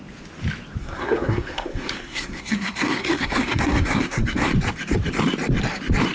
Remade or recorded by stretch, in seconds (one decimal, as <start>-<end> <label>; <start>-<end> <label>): 0.0-0.8 recorded; 0.8-4.5 remade; 4.5-6.1 recorded